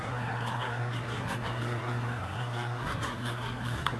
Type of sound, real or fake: fake